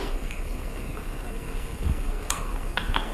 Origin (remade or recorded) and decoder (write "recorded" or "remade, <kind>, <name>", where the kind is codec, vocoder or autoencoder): remade, codec, SNAC